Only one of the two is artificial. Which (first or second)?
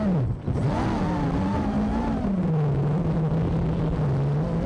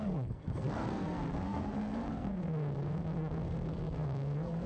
second